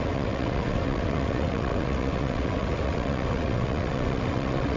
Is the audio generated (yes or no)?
yes